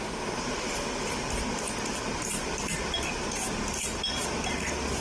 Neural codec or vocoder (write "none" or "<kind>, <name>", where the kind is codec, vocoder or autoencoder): none